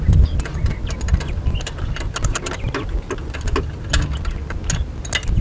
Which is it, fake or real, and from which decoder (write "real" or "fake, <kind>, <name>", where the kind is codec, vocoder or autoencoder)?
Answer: real